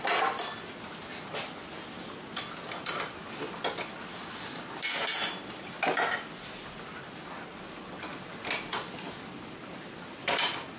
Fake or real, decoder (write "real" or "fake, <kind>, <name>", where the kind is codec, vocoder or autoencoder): real